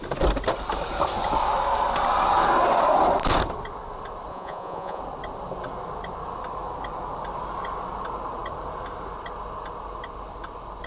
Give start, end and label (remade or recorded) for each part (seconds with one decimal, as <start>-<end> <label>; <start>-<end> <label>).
0.0-4.3 recorded; 4.3-5.0 remade; 5.0-10.9 recorded